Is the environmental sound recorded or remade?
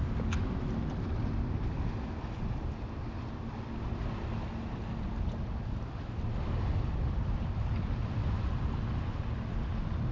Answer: recorded